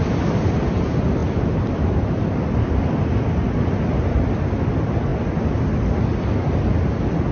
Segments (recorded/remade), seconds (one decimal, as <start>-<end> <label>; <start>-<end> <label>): 0.0-7.3 recorded